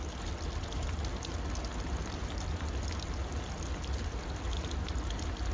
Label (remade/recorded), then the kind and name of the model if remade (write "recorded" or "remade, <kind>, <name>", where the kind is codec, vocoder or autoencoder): recorded